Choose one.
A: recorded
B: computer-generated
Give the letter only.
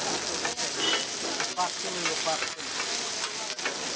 A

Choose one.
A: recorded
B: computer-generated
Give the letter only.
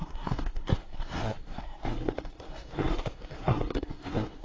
B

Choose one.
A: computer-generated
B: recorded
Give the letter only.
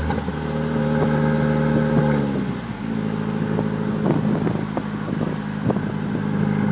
B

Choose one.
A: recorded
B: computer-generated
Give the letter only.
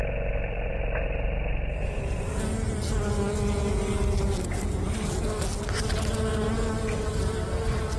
A